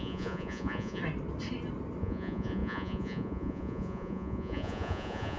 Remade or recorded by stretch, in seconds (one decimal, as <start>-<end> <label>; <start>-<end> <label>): 0.0-1.0 remade; 1.0-2.0 recorded; 2.0-5.4 remade